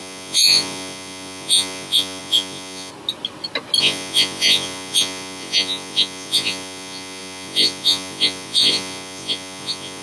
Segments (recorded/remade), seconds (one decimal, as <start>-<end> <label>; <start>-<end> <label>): 0.0-2.9 remade; 2.9-3.8 recorded; 3.8-10.0 remade

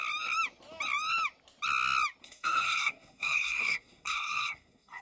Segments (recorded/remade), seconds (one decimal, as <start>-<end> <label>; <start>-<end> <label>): 0.0-2.2 recorded; 2.2-5.0 remade

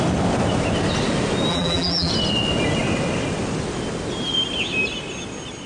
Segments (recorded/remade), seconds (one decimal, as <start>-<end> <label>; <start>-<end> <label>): 0.0-1.5 recorded; 1.5-2.1 remade; 2.1-5.7 recorded

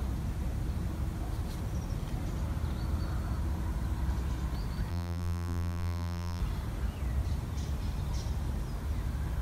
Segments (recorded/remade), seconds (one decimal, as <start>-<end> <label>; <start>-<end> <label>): 0.0-4.9 recorded; 4.9-6.4 remade; 6.4-9.4 recorded

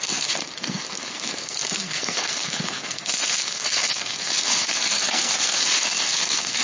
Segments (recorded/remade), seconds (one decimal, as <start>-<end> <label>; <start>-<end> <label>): 0.0-6.6 remade

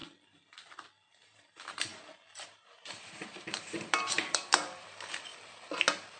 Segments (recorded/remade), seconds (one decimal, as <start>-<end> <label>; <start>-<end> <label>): 0.0-1.1 recorded; 1.1-1.9 remade; 1.9-2.4 recorded; 2.4-5.3 remade; 5.3-6.2 recorded